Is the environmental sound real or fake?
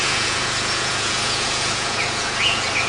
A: fake